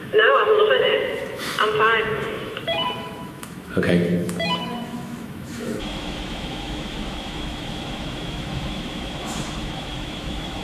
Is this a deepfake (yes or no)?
yes